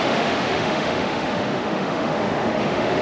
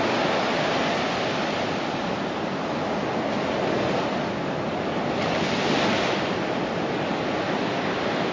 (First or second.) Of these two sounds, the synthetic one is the first